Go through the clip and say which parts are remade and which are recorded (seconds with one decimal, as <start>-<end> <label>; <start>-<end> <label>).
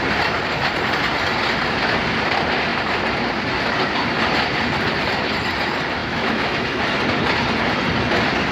0.0-6.0 recorded; 6.0-6.8 remade; 6.8-8.5 recorded